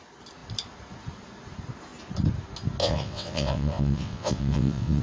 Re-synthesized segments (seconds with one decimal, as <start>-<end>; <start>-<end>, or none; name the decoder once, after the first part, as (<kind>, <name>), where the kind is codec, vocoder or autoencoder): 2.8-5.0 (vocoder, WaveNeXt)